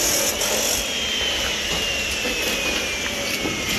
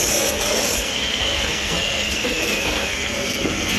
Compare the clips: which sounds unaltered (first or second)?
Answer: first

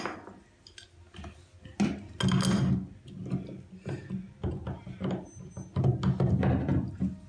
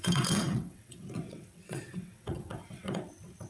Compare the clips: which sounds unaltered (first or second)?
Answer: first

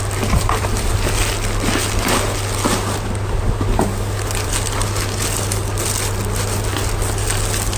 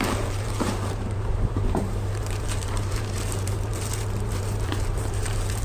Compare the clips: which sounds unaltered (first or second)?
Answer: first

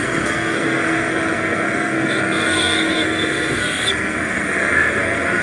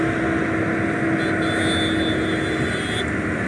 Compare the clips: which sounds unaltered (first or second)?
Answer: second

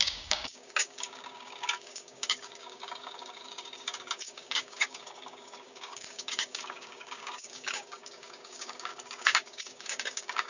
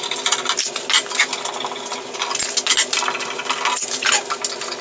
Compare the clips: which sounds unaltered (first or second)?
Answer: second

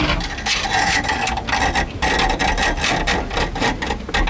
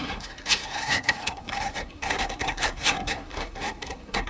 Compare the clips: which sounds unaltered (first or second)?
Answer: first